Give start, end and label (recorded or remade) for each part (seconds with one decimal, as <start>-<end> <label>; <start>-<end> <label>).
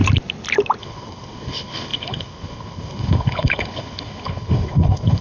0.0-0.8 recorded; 0.8-5.2 remade